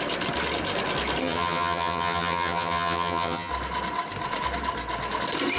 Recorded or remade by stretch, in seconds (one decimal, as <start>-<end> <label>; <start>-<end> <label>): 0.0-1.2 recorded; 1.2-3.5 remade; 3.5-5.6 recorded